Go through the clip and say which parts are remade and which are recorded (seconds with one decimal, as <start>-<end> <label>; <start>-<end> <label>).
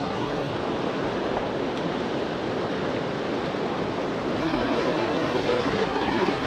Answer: 0.0-0.5 remade; 0.5-4.4 recorded; 4.4-6.5 remade